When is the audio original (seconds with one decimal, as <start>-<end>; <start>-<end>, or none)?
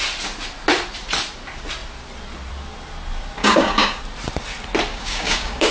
0.0-3.4; 4.0-4.9